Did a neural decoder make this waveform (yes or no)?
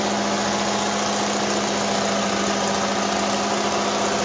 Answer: no